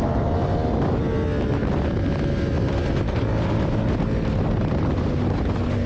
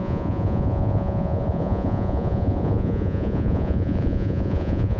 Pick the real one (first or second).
first